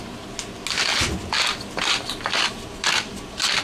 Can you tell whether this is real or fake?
real